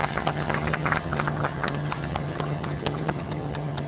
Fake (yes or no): yes